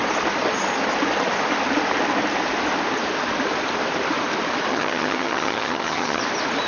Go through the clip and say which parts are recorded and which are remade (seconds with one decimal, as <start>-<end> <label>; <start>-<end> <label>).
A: 0.0-4.7 recorded; 4.7-6.2 remade; 6.2-6.7 recorded